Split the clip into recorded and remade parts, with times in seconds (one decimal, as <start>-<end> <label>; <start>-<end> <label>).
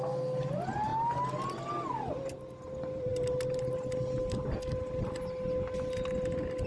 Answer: 0.0-6.7 recorded